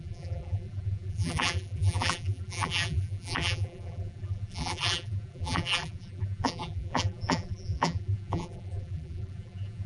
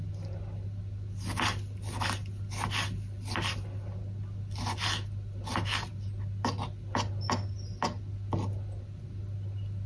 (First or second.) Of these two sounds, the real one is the second